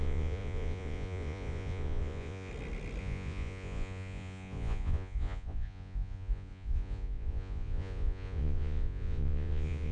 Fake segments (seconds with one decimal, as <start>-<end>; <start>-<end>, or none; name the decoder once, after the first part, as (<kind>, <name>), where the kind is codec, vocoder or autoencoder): 0.0-2.5 (vocoder, Vocos); 3.0-9.9